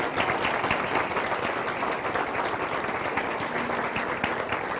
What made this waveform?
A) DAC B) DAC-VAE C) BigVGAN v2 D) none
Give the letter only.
D